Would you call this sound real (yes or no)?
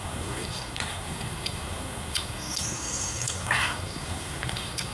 no